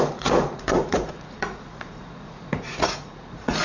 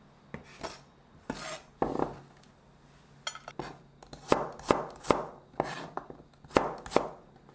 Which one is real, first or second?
second